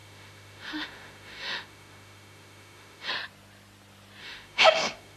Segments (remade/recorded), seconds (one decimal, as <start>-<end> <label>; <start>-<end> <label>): 0.0-3.1 remade; 3.1-4.2 recorded; 4.2-5.2 remade

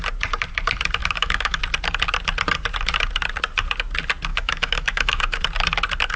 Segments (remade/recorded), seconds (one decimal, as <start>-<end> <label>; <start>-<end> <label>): 0.0-1.0 recorded; 1.0-1.6 remade; 1.6-4.3 recorded; 4.3-5.4 remade; 5.4-6.2 recorded

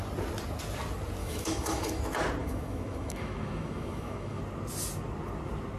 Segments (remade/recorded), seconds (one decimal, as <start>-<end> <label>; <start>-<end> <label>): 0.0-1.2 recorded; 1.2-2.0 remade; 2.0-2.4 recorded; 2.4-4.4 remade; 4.4-5.8 recorded

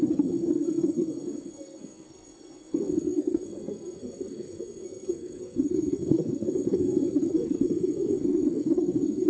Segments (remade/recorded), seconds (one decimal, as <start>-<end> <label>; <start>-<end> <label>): 0.0-9.3 remade

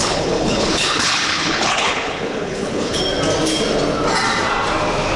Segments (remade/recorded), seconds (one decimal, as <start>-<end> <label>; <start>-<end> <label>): 0.0-3.0 remade; 3.0-5.2 recorded

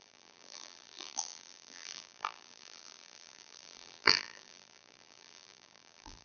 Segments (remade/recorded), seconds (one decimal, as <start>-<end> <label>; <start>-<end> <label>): 0.0-6.2 remade

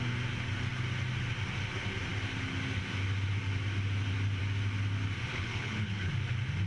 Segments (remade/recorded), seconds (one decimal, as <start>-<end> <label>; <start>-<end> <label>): 0.0-5.3 recorded; 5.3-6.1 remade; 6.1-6.7 recorded